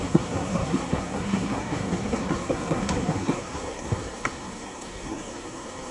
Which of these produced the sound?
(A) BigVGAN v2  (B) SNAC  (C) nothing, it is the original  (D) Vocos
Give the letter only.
B